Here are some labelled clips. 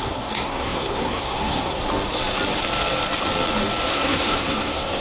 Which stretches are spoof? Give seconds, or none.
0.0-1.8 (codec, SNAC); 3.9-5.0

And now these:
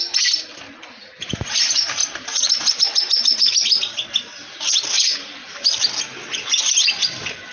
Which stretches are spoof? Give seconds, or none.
none

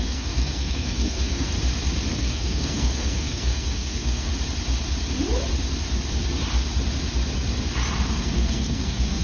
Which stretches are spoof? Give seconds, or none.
0.0-1.5 (codec, SNAC); 2.1-4.3; 8.2-9.2